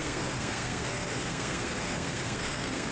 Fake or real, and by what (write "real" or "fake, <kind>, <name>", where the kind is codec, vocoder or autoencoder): fake, codec, SNAC